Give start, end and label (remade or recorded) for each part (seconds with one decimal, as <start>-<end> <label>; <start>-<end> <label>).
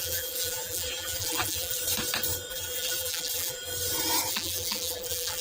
0.0-1.8 remade; 1.8-2.5 recorded; 2.5-3.7 remade; 3.7-4.3 recorded; 4.3-5.4 remade